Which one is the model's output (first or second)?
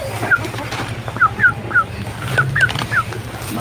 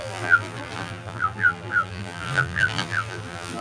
second